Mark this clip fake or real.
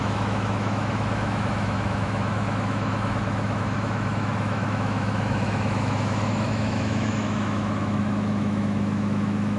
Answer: fake